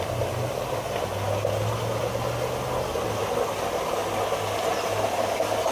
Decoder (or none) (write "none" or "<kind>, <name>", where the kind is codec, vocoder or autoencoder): none